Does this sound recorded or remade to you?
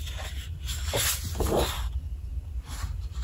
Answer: recorded